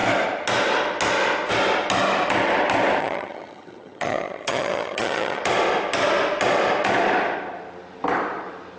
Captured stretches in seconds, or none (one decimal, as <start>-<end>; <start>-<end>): 0.0-3.0; 5.4-8.8